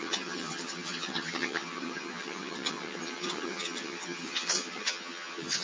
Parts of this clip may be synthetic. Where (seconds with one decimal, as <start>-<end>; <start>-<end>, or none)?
0.0-5.6